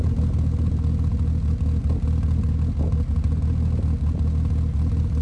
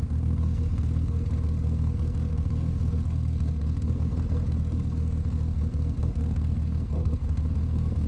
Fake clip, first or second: second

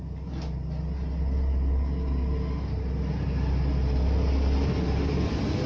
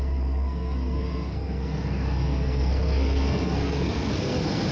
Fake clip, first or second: second